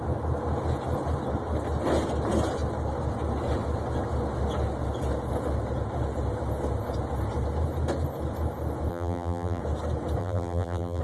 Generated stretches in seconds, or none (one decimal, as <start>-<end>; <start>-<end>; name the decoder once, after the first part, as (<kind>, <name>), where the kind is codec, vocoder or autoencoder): 8.9-9.6 (vocoder, BigVGAN v2); 10.2-11.0